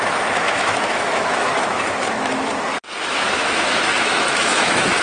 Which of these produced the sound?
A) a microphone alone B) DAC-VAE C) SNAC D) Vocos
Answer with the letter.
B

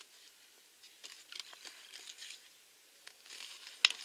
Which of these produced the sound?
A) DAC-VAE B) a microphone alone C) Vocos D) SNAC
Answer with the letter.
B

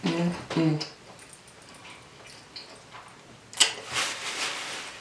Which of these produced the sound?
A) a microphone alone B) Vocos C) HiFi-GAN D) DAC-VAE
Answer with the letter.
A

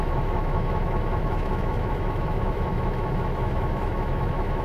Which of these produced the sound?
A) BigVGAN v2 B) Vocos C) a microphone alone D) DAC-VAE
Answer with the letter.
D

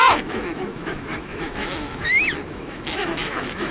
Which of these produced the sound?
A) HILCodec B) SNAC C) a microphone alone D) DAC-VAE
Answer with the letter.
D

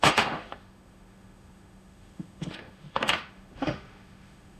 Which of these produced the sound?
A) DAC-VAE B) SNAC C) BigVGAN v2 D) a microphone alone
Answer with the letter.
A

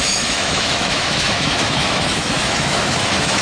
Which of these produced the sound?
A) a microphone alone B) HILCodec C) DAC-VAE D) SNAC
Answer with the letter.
C